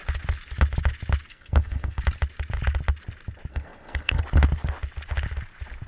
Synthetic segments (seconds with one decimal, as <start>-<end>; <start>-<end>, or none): 1.3-2.0; 3.5-4.2